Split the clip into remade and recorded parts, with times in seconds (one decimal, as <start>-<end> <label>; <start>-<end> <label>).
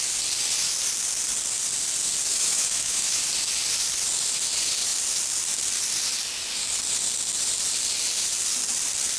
0.0-2.3 recorded; 2.3-3.2 remade; 3.2-9.2 recorded